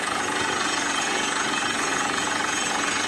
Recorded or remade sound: remade